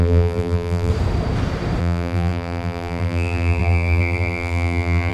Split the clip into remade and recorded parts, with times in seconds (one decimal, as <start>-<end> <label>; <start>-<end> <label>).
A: 0.0-0.9 remade; 0.9-1.8 recorded; 1.8-5.1 remade